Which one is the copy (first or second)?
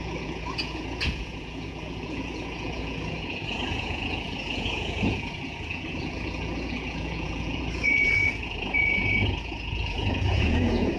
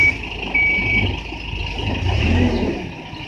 first